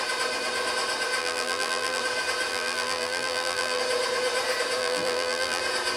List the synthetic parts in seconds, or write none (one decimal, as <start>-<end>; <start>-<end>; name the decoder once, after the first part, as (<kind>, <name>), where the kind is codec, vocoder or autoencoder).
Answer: 1.2-2.0 (vocoder, BigVGAN v2); 2.5-3.8; 4.8-5.6